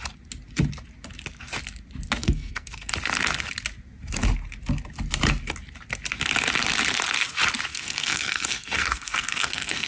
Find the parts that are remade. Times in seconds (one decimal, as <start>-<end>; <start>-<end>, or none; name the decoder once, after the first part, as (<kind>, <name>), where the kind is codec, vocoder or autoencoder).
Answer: 2.2-2.9 (codec, SNAC); 7.7-9.9